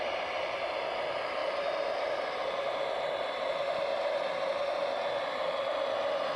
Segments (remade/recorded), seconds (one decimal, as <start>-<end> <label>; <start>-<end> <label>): 0.0-6.4 recorded